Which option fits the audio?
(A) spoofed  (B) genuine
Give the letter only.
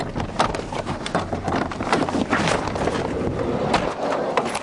B